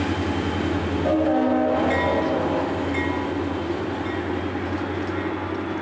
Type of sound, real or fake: real